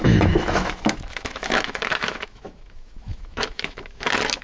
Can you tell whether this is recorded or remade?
remade